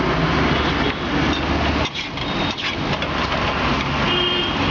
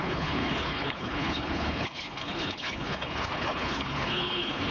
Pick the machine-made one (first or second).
second